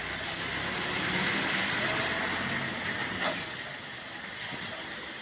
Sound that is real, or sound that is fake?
real